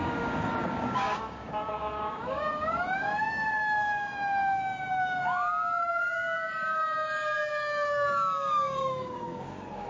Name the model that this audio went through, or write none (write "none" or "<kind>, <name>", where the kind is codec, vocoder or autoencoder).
codec, DAC